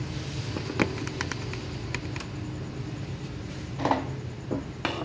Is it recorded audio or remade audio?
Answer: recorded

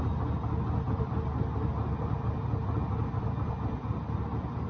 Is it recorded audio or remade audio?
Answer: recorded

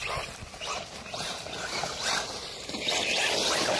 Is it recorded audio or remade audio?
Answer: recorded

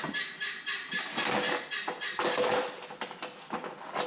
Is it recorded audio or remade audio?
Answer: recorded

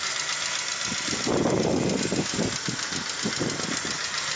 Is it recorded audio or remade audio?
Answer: recorded